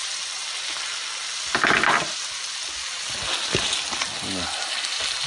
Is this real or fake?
real